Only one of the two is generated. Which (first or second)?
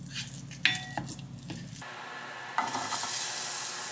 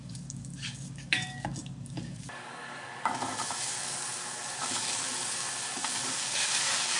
second